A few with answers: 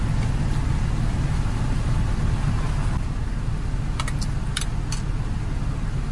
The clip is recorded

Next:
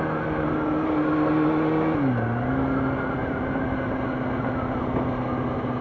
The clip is recorded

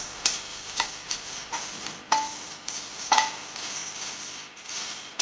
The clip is recorded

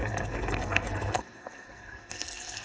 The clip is remade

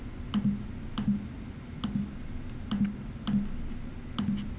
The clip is recorded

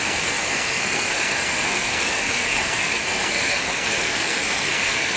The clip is remade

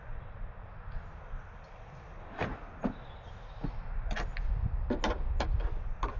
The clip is recorded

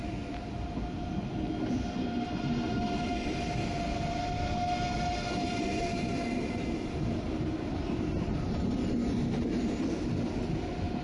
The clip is recorded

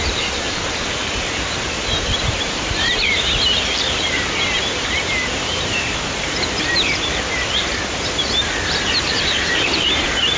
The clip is remade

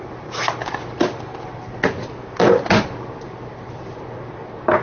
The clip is recorded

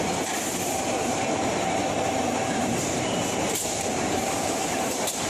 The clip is remade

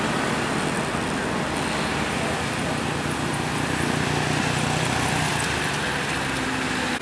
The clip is recorded